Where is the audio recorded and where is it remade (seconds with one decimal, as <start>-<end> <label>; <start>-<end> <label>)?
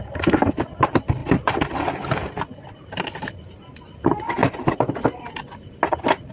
0.0-1.2 recorded; 1.2-1.9 remade; 1.9-4.4 recorded; 4.4-5.3 remade; 5.3-6.3 recorded